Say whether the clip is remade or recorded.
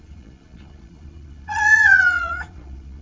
remade